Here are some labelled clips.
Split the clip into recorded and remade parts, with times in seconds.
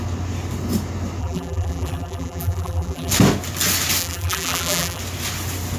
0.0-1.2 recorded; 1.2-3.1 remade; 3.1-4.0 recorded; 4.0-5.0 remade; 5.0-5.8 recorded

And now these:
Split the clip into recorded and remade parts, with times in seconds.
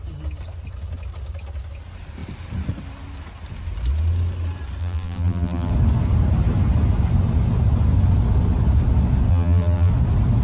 0.0-4.8 recorded; 4.8-5.7 remade; 5.7-9.3 recorded; 9.3-9.9 remade; 9.9-10.4 recorded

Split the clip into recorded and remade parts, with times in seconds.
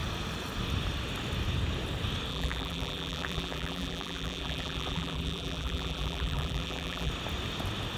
0.0-2.3 recorded; 2.3-7.1 remade; 7.1-8.0 recorded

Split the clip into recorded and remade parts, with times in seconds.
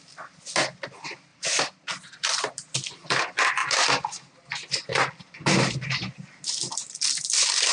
0.0-1.3 recorded; 1.3-2.4 remade; 2.4-7.7 recorded